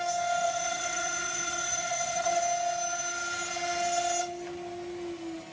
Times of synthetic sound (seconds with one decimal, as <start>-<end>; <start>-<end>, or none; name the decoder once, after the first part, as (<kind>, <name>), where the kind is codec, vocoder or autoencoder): 0.4-2.4 (vocoder, WaveNeXt)